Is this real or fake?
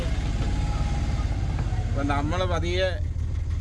real